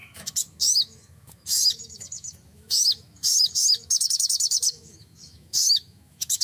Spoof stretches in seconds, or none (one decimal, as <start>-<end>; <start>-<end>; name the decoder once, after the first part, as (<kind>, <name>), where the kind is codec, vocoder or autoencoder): 0.0-6.4 (autoencoder, DAC-VAE)

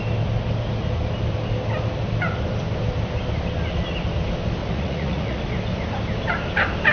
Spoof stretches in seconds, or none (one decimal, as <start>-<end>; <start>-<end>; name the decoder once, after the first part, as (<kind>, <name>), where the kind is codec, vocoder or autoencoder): 4.6-5.4 (vocoder, Vocos)

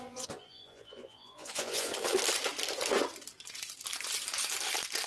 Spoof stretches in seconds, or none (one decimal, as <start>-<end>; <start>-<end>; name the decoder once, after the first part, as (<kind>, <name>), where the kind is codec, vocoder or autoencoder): 0.0-1.9 (vocoder, Vocos)

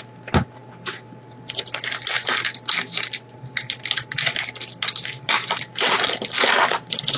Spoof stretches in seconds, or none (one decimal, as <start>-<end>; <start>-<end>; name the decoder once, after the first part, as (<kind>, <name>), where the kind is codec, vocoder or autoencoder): none

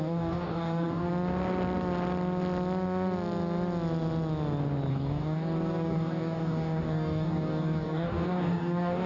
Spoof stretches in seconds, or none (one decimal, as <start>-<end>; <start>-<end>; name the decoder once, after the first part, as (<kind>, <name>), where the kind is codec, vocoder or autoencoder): 0.0-1.1 (codec, DAC); 4.9-9.1